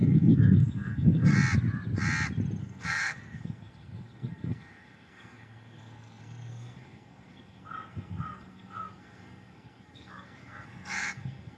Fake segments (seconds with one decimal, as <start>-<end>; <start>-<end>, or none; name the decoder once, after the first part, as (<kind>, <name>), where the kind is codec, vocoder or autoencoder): 0.0-1.3 (codec, SNAC); 2.6-11.6